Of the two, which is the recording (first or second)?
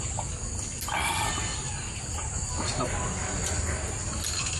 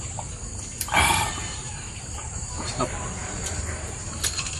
first